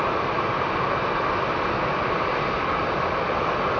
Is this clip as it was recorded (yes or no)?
yes